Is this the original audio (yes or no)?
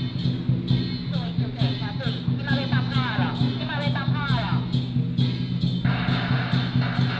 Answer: yes